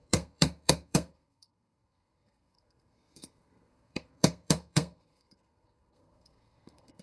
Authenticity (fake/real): fake